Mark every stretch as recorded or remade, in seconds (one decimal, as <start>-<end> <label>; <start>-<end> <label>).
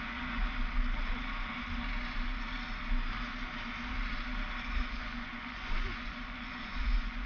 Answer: 0.0-0.4 remade; 0.4-4.8 recorded; 4.8-7.3 remade